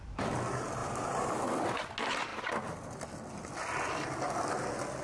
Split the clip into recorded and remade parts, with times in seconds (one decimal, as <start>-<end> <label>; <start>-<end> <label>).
0.0-0.8 recorded; 0.8-1.3 remade; 1.3-5.0 recorded